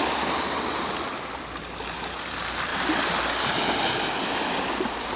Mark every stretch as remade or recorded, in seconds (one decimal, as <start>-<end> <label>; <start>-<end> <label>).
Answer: 0.0-5.2 recorded